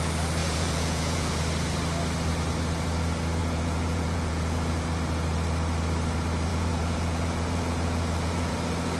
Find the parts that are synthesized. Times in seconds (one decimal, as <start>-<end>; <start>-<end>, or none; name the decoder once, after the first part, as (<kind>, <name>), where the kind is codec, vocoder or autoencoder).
0.4-1.4 (vocoder, Vocos); 3.4-5.0; 6.5-8.5